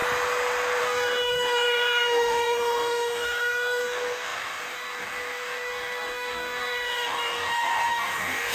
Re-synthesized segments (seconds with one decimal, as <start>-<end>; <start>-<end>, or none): 0.8-8.5